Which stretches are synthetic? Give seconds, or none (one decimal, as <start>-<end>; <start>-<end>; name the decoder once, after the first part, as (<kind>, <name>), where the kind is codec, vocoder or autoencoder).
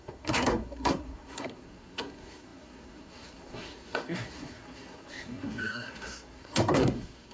0.0-7.3 (codec, SNAC)